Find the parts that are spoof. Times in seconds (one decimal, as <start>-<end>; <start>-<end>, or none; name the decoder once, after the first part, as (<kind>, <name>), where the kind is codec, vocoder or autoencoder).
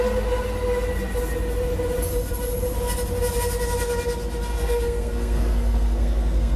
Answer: 4.5-6.6 (codec, SNAC)